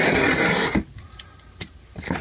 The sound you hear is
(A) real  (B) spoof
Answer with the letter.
A